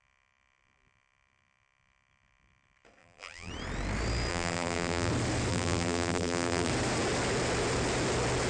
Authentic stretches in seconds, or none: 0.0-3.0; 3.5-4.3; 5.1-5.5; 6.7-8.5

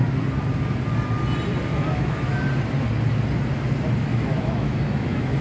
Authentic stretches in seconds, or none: 0.0-1.7; 2.3-4.1

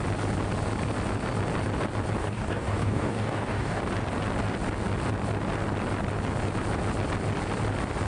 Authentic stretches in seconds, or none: 0.0-2.2; 3.8-8.1

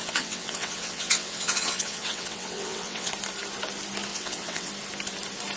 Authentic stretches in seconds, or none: 3.1-4.1; 4.7-5.6

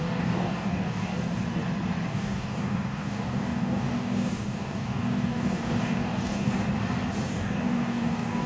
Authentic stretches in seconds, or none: 1.1-2.1; 6.5-7.3